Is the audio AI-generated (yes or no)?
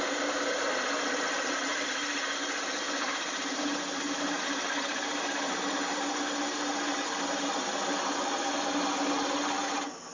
no